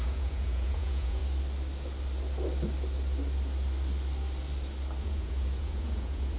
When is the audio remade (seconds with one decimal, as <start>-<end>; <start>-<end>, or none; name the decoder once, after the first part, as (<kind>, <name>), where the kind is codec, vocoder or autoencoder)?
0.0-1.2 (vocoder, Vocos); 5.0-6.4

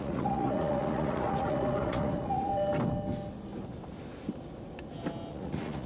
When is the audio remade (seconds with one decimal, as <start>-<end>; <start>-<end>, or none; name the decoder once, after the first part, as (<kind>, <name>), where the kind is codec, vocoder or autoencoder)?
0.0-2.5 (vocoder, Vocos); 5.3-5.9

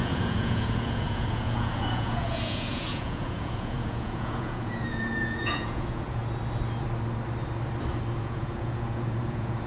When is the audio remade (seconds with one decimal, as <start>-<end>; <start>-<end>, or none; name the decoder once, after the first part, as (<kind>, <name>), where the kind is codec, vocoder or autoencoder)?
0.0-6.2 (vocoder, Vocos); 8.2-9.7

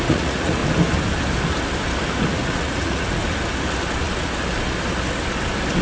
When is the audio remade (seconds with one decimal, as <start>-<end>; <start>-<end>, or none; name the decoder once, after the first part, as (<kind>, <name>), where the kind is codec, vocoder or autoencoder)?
0.0-0.6 (vocoder, Vocos); 2.3-3.2

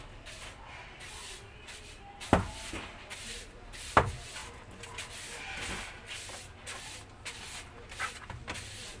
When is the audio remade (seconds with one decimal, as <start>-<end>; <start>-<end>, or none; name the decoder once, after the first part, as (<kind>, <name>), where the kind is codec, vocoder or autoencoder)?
none

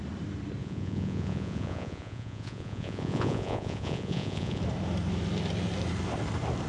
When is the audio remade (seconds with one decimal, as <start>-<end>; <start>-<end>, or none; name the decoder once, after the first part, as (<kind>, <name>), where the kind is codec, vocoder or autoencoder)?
0.6-4.6 (vocoder, Vocos)